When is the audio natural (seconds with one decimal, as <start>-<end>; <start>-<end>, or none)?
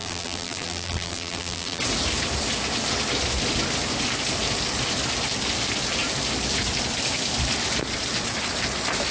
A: 1.8-9.1